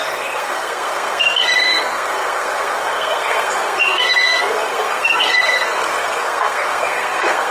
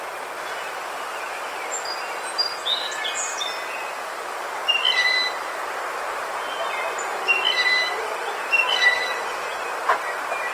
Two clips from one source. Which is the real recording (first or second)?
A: second